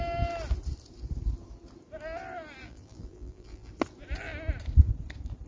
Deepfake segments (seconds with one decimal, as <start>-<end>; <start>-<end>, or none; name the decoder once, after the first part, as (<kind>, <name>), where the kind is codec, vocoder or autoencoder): 2.6-3.7 (vocoder, BigVGAN v2)